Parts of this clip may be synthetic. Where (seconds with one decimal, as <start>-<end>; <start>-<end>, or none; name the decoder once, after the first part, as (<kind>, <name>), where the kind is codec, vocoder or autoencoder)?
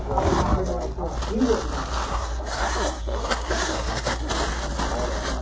2.1-4.3 (codec, SNAC)